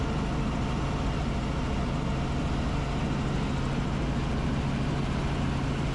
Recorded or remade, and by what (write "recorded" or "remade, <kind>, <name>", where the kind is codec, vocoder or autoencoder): recorded